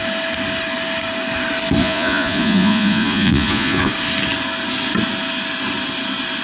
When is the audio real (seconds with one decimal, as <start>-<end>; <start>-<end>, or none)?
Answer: 0.0-1.8; 3.9-6.4